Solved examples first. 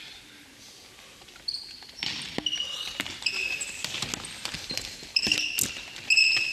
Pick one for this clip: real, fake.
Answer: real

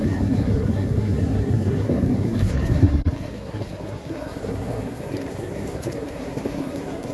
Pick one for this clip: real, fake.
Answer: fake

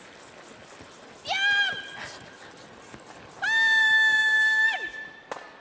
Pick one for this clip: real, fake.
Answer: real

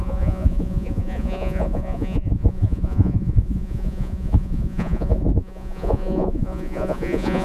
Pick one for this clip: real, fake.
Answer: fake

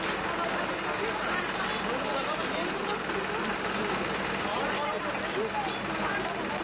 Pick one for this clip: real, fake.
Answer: real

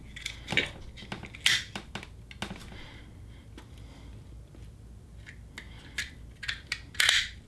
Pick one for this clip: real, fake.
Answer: real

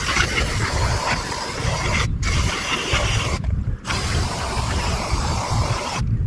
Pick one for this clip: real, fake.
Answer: fake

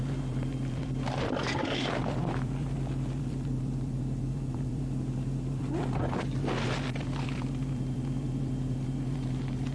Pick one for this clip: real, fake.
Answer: fake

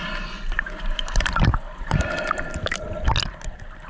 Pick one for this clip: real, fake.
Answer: real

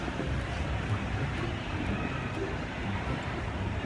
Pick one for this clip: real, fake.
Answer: fake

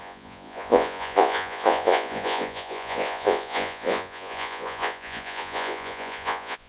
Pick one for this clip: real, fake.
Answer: fake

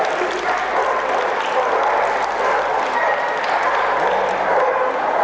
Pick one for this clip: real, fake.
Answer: real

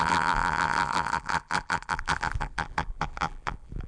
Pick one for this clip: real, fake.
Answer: fake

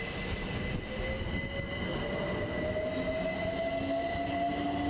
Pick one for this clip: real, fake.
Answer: real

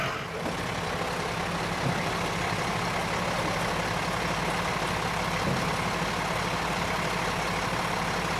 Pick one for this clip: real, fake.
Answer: real